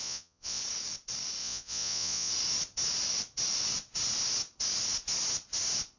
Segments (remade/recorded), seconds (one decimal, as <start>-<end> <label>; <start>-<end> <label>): 0.0-0.6 remade; 0.6-1.4 recorded; 1.4-2.3 remade; 2.3-6.0 recorded